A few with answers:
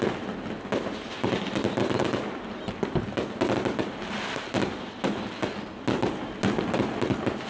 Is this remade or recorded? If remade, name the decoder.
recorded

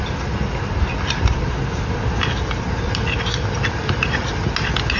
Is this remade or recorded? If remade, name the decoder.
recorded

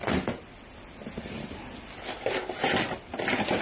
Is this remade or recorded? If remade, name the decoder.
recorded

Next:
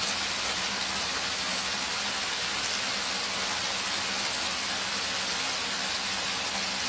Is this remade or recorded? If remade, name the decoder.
recorded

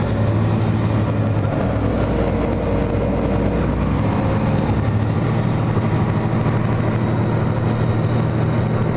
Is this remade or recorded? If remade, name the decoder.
recorded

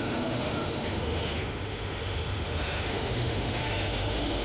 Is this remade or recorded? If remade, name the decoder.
remade, autoencoder, DAC-VAE